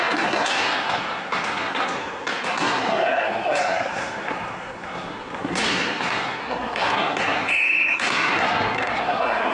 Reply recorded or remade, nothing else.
remade